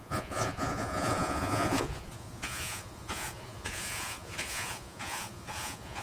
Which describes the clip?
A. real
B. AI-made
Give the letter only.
B